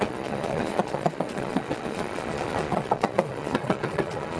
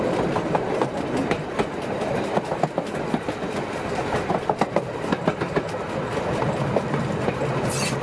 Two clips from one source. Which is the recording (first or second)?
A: second